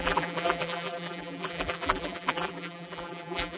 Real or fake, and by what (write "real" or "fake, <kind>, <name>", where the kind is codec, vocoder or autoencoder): fake, vocoder, BigVGAN v2